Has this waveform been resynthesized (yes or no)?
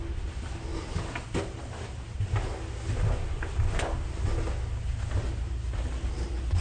no